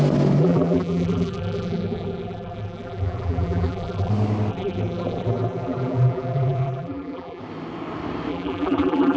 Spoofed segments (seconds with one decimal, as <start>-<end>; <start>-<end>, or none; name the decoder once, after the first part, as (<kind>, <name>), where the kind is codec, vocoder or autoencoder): 0.4-4.1 (vocoder, BigVGAN v2); 4.5-7.4; 8.3-9.2